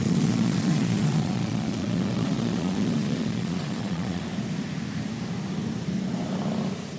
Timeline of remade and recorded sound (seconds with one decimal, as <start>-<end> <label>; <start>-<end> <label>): 0.0-4.2 remade; 4.2-7.0 recorded